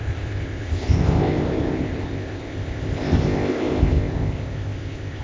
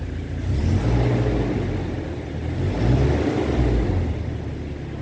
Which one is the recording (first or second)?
second